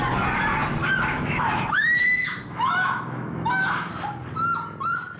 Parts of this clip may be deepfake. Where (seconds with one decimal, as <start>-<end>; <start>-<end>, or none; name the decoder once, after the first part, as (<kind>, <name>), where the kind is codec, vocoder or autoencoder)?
0.8-3.9 (autoencoder, DAC-VAE)